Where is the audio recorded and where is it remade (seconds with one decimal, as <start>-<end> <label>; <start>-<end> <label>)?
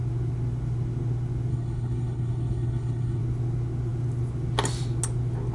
0.0-1.5 recorded; 1.5-3.2 remade; 3.2-5.5 recorded